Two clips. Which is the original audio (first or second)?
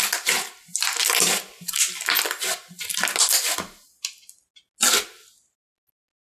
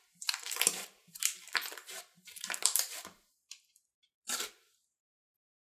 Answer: first